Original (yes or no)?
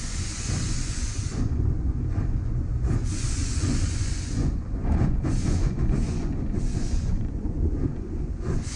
no